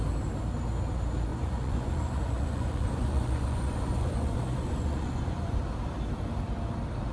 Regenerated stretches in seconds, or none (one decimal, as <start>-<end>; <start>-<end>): 1.3-5.6